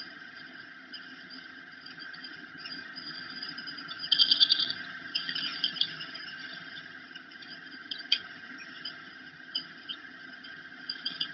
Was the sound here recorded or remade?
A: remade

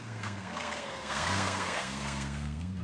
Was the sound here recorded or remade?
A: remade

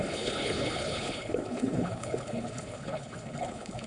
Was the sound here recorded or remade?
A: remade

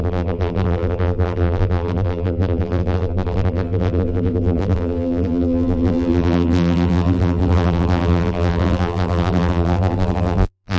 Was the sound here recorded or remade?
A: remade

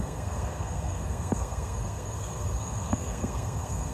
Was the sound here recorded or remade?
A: remade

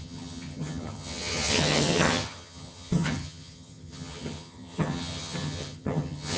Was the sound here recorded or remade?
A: remade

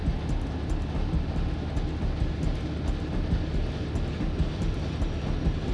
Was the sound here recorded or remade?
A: recorded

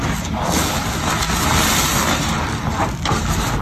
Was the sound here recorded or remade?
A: recorded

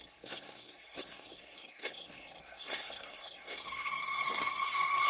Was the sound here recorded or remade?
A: remade